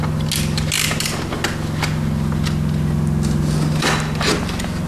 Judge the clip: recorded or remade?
recorded